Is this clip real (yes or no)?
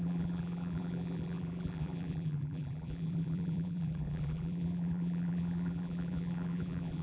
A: no